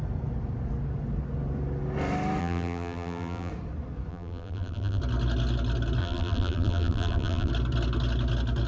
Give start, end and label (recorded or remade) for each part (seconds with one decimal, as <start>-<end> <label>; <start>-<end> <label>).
0.0-2.4 recorded; 2.4-3.5 remade; 3.5-4.1 recorded; 4.1-5.0 remade; 5.0-6.0 recorded; 6.0-7.5 remade; 7.5-8.7 recorded

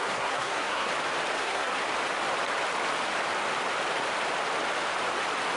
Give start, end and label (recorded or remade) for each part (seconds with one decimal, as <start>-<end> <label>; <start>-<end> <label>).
0.0-0.9 remade; 0.9-1.4 recorded; 1.4-1.8 remade; 1.8-5.6 recorded

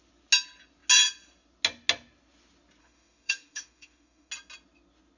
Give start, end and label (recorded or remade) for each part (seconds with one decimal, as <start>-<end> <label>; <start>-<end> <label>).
0.0-2.8 recorded; 2.8-4.3 remade; 4.3-5.2 recorded

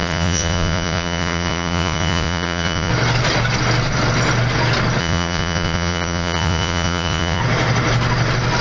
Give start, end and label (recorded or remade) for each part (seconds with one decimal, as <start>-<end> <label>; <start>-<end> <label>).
0.0-2.9 remade; 2.9-5.0 recorded; 5.0-7.4 remade; 7.4-8.6 recorded

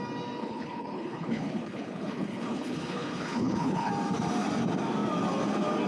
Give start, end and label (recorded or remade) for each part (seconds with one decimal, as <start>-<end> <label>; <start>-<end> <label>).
0.0-0.4 recorded; 0.4-3.9 remade; 3.9-5.9 recorded